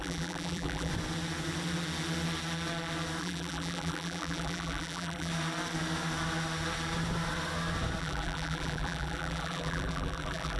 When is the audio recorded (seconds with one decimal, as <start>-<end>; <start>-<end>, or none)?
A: 0.9-3.2; 5.3-8.0